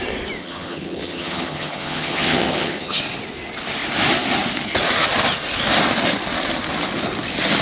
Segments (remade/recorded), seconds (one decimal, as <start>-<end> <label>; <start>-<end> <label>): 0.0-0.4 recorded; 0.4-3.0 remade; 3.0-7.6 recorded